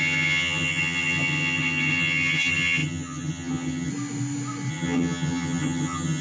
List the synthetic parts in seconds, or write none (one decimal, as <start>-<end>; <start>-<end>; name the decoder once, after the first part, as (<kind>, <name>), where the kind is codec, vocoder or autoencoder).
0.0-3.9 (vocoder, HiFi-GAN); 4.7-6.2